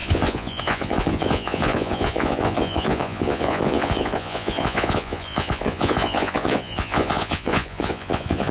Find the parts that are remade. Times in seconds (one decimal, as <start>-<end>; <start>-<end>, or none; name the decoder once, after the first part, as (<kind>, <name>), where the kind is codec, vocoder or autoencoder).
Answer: 0.0-8.5 (vocoder, Vocos)